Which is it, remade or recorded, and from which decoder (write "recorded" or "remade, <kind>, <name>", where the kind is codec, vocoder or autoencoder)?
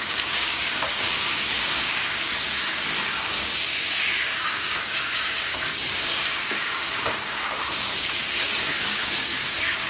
remade, codec, DAC